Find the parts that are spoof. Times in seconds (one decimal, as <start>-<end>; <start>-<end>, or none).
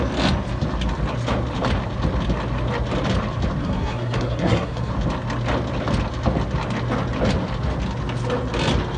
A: 3.6-4.9